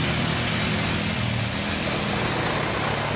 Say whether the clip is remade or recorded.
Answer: recorded